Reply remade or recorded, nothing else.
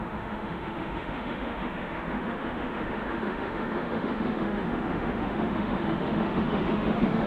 remade